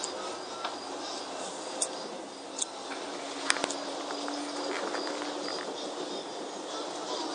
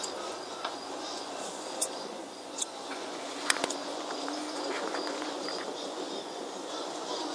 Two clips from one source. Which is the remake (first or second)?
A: second